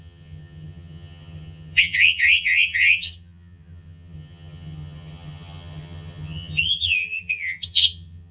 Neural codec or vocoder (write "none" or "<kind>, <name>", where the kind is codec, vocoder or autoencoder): vocoder, HiFi-GAN